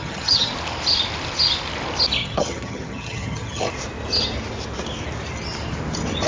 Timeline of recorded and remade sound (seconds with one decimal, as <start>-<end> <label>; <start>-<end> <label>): 0.0-0.5 remade; 0.5-2.2 recorded; 2.2-3.7 remade; 3.7-6.3 recorded